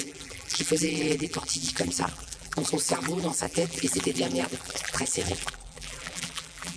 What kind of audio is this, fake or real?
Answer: fake